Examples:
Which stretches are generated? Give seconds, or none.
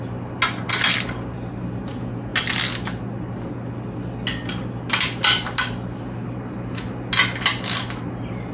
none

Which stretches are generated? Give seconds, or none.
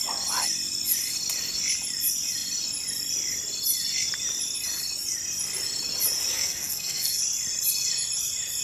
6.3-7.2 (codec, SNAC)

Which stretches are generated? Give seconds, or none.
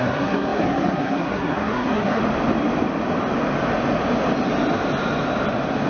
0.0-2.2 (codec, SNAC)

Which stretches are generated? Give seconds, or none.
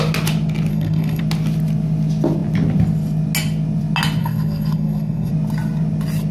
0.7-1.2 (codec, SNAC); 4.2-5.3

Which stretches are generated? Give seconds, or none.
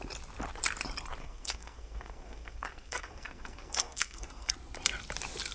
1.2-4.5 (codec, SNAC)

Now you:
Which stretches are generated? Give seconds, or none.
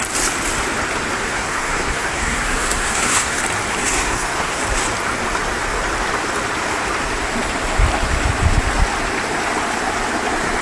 1.2-3.4 (codec, SNAC); 3.8-4.6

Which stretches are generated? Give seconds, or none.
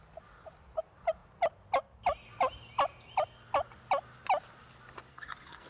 5.1-5.7 (codec, SNAC)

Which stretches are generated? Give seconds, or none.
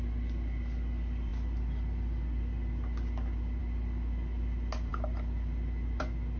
none